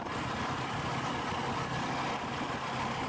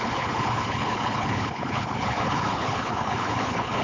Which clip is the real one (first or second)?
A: first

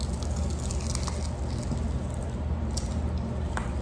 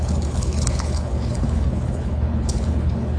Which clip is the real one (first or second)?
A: first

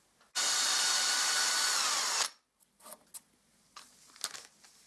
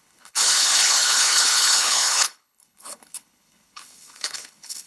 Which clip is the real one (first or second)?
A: first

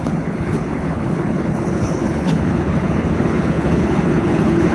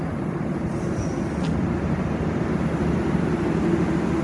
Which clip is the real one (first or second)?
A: second